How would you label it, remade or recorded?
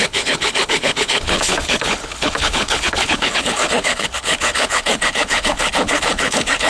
remade